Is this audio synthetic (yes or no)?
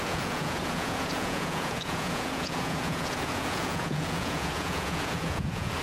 yes